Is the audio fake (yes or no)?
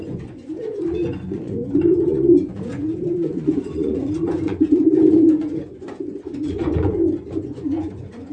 yes